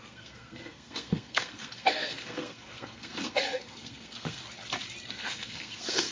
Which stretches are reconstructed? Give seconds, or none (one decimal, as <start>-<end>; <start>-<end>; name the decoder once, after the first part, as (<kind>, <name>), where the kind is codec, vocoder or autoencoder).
0.0-4.4 (codec, SNAC); 5.1-6.1